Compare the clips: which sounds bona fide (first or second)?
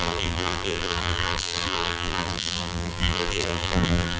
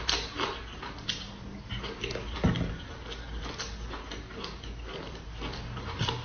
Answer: second